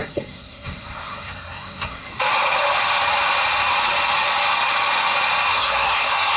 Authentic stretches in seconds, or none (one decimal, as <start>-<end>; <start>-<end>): 2.1-5.5